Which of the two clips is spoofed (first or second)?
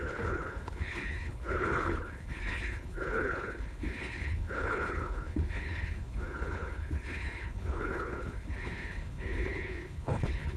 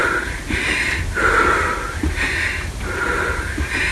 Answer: first